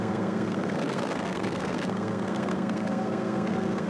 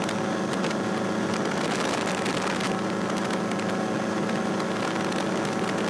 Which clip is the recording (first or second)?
second